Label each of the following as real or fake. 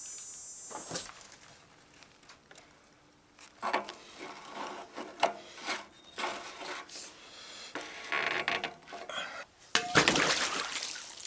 real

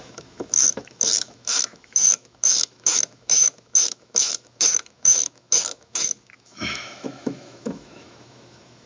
fake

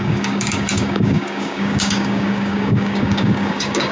fake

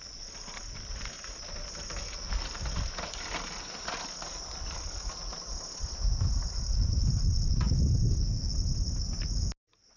real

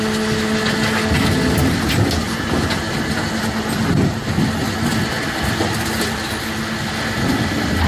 real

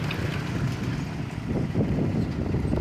real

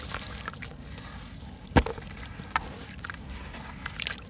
real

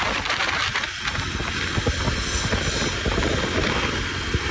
real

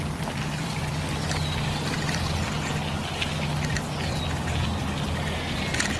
real